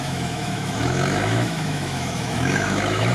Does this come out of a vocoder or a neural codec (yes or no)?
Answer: yes